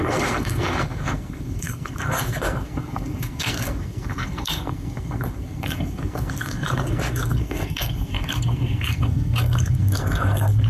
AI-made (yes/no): yes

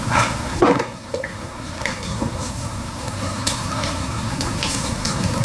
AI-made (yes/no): yes